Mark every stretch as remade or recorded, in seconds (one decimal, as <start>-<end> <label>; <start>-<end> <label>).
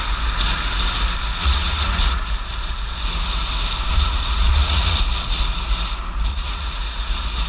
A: 0.0-1.4 recorded; 1.4-2.2 remade; 2.2-3.9 recorded; 3.9-5.0 remade; 5.0-6.3 recorded; 6.3-7.5 remade